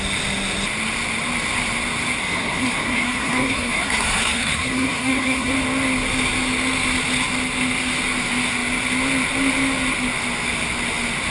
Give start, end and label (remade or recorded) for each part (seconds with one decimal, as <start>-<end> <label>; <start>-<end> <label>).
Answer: 0.0-2.2 recorded; 2.2-5.5 remade; 5.5-11.3 recorded